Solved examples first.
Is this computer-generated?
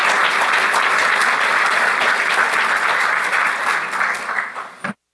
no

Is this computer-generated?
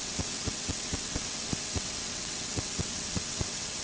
yes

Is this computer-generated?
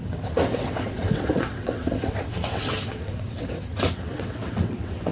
yes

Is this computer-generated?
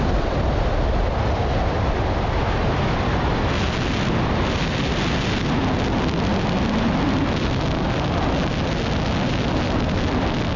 no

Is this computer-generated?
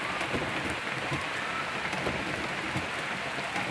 no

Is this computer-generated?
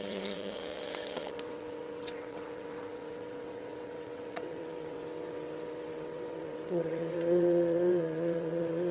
yes